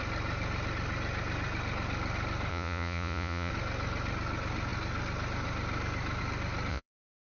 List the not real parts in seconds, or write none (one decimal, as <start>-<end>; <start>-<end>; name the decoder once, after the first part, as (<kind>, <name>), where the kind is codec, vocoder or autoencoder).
2.5-3.5 (vocoder, Vocos); 6.7-7.4